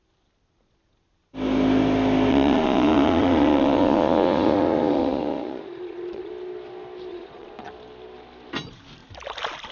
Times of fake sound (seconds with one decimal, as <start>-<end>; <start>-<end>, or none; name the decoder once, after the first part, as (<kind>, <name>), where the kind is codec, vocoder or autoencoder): 2.3-6.3 (vocoder, Vocos); 7.1-7.7